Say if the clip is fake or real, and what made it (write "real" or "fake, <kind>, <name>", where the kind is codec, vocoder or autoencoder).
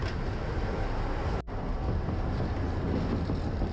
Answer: real